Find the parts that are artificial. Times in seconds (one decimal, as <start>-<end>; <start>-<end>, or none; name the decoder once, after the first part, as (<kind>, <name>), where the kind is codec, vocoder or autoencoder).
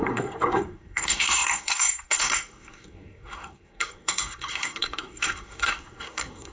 0.0-6.5 (codec, SNAC)